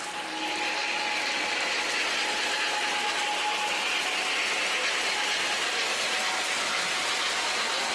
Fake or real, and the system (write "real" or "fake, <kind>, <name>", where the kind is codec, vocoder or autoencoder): real